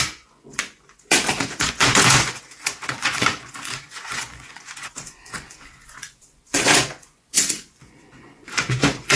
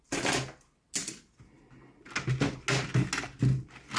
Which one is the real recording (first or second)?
second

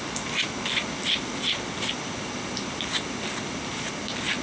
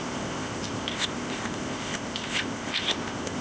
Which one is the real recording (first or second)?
first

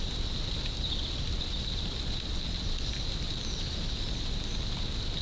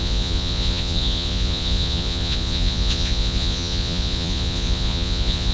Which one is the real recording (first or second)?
first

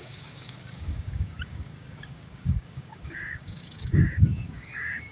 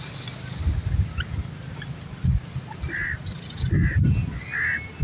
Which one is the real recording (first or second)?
second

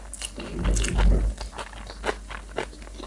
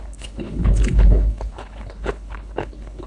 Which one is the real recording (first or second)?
first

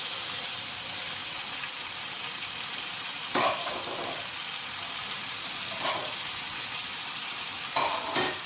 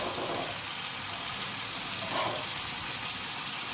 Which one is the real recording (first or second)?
second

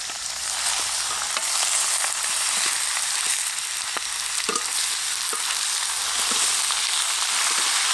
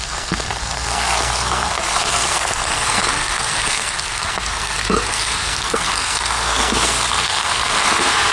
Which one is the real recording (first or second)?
first